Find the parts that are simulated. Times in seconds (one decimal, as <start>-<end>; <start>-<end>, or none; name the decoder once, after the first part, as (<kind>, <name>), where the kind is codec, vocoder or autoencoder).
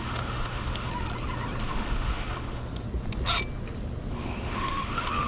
0.0-0.9 (autoencoder, DAC-VAE); 1.6-2.6; 4.1-5.3